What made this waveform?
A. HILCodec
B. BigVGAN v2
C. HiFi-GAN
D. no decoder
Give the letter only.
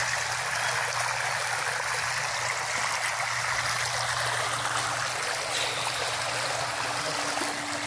D